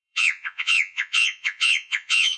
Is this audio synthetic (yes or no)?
yes